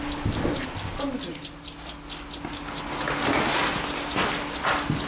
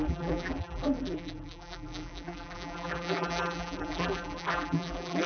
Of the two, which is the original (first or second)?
first